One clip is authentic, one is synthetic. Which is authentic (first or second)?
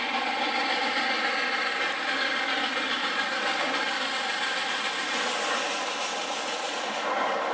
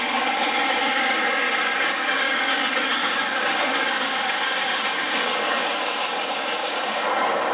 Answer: first